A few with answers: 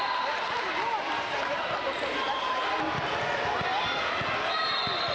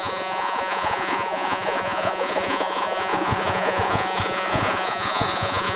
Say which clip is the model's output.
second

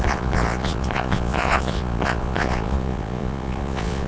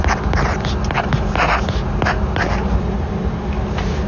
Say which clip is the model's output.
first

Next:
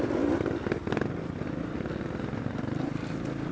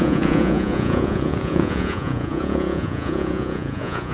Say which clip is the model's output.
second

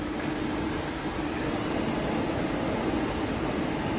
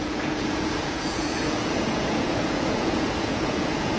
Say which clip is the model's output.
second